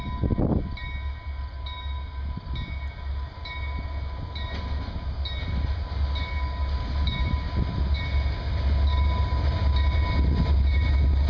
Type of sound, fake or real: real